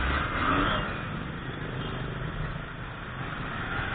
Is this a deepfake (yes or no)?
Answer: no